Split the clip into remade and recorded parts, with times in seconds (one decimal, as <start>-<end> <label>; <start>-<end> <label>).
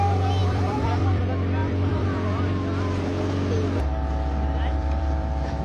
0.0-0.4 recorded; 0.4-1.2 remade; 1.2-1.6 recorded; 1.6-3.1 remade; 3.1-4.7 recorded; 4.7-5.6 remade